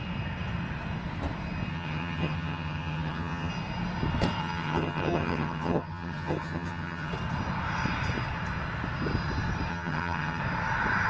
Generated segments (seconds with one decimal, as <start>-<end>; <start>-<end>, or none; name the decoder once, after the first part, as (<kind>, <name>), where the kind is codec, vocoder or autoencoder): 1.7-3.5 (vocoder, HiFi-GAN); 4.4-7.1; 9.7-10.4

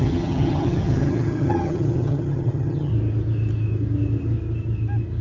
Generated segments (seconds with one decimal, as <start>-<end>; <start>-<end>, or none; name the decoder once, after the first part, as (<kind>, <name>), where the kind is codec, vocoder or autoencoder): 0.0-2.9 (vocoder, HiFi-GAN)

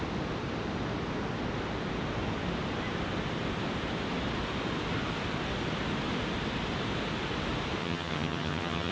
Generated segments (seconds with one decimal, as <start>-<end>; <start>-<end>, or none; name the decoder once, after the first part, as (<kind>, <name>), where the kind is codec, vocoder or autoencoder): 7.8-8.9 (vocoder, HiFi-GAN)

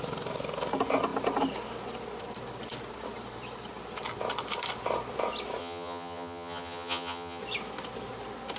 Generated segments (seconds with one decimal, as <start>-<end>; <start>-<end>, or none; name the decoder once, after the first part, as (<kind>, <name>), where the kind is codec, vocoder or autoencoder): 5.6-7.4 (vocoder, HiFi-GAN)